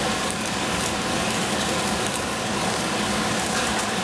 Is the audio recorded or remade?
remade